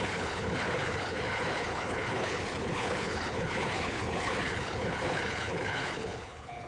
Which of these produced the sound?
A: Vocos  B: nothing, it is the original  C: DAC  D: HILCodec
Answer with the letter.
D